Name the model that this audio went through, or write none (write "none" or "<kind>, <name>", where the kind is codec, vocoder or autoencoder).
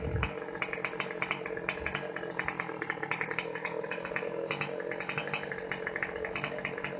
none